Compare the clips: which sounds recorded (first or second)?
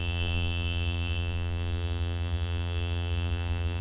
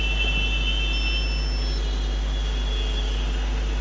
second